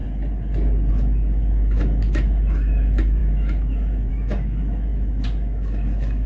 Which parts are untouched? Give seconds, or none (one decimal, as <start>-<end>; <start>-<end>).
0.0-0.9